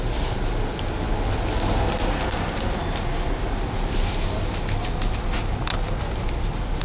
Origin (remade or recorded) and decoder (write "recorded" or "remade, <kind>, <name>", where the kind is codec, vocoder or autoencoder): recorded